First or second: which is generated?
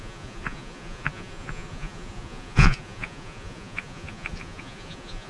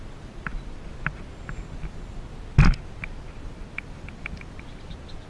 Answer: first